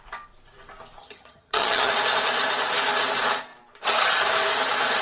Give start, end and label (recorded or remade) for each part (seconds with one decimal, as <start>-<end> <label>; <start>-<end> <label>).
0.0-1.0 recorded; 1.0-1.9 remade; 1.9-5.0 recorded